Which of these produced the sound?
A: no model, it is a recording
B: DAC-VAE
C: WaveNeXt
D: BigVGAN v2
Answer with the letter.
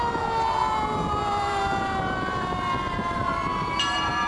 D